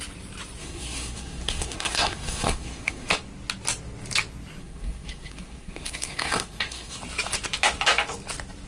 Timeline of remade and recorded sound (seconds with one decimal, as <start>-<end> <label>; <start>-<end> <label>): 0.0-0.6 recorded; 0.6-3.1 remade; 3.1-4.6 recorded; 4.6-7.0 remade; 7.0-8.7 recorded